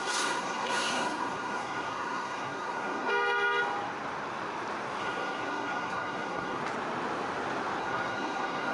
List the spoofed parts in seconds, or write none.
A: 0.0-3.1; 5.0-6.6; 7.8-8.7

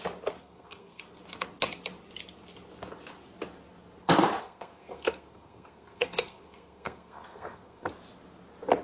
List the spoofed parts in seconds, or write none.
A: 0.4-1.0; 4.4-7.9